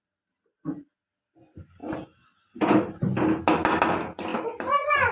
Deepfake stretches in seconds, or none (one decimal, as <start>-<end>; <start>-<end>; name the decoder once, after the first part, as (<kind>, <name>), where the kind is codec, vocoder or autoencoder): none